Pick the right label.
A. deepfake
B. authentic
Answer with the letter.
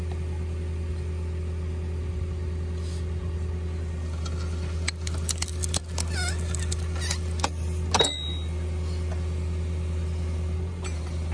B